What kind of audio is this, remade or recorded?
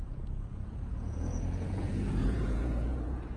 remade